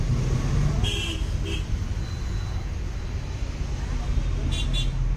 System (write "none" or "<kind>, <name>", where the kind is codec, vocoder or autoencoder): none